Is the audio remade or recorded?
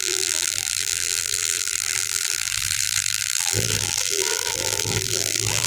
remade